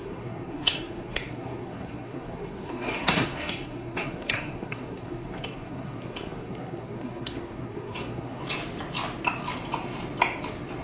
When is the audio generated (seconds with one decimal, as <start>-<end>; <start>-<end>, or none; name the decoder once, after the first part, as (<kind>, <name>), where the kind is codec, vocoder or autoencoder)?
0.0-8.4 (codec, SNAC)

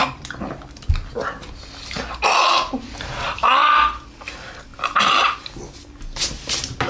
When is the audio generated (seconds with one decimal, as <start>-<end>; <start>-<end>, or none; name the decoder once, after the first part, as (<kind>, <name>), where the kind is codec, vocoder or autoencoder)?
none

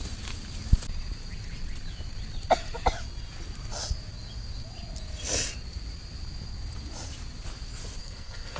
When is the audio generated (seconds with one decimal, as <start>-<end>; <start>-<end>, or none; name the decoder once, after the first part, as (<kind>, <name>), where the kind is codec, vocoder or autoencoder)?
8.0-8.6 (codec, SNAC)

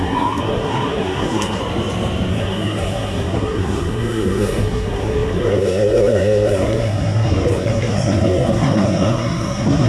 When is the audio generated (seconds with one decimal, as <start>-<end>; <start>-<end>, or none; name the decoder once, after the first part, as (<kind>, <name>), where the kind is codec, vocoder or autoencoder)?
0.0-1.6 (codec, SNAC); 2.3-9.9